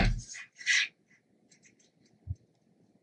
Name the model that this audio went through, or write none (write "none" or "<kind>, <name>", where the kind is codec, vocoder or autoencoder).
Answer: none